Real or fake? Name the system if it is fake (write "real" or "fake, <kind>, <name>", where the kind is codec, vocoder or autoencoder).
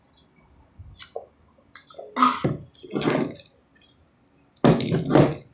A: real